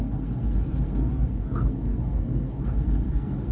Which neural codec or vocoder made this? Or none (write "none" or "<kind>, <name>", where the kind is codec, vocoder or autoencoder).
codec, SNAC